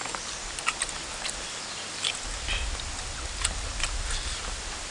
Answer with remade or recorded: recorded